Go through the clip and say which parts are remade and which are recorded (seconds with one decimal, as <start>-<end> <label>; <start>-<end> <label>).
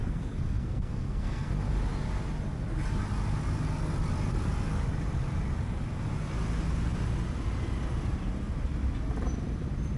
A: 0.0-1.5 remade; 1.5-10.0 recorded